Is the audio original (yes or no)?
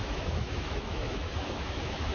no